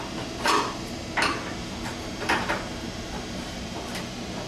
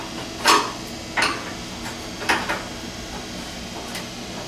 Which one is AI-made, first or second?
first